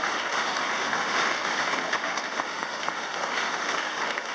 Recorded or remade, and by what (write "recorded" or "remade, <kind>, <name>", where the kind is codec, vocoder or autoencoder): remade, autoencoder, DAC-VAE